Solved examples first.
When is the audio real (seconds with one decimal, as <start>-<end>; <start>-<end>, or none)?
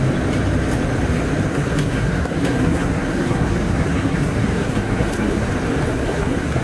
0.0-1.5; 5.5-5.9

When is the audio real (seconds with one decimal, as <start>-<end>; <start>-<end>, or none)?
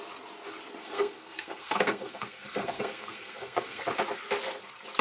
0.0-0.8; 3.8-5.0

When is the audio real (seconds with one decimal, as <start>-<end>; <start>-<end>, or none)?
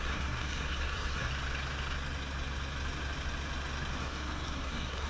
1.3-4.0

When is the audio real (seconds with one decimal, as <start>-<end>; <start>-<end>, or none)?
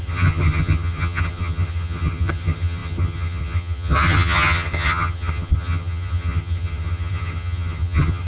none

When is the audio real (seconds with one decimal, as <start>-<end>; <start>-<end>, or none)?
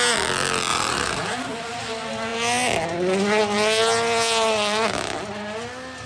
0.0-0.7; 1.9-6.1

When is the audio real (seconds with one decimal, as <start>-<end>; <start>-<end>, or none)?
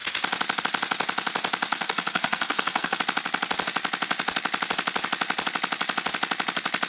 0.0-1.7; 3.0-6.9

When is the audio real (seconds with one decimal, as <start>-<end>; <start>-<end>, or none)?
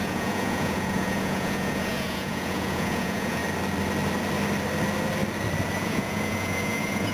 3.4-5.8